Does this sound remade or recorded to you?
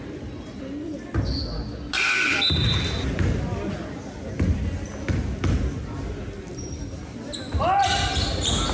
recorded